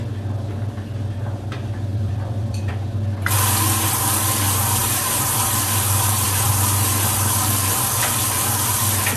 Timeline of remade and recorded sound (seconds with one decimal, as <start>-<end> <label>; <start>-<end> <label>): 0.0-1.9 recorded; 1.9-2.7 remade; 2.7-4.8 recorded; 4.8-6.5 remade; 6.5-9.2 recorded